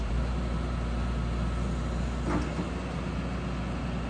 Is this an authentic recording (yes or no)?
yes